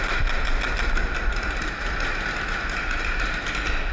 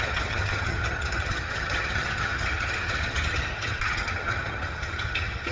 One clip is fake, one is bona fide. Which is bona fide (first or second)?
first